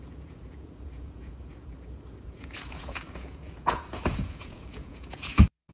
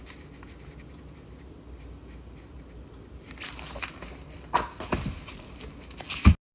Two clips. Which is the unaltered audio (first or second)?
second